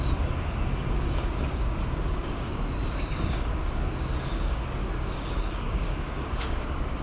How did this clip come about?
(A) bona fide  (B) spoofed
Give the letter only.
B